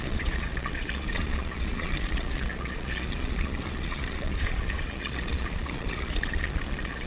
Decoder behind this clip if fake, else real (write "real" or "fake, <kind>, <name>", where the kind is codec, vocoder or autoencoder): fake, vocoder, Vocos